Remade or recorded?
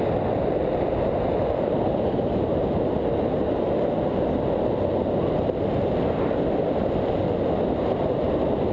recorded